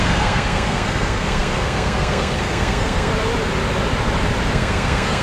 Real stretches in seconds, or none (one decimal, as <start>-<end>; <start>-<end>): 3.1-4.5